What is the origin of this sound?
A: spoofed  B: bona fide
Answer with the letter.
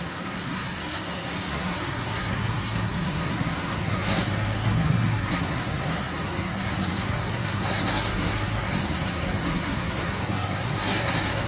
A